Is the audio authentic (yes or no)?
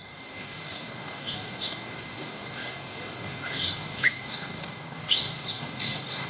no